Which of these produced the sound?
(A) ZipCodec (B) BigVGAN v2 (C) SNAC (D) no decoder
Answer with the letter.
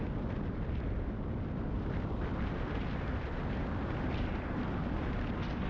B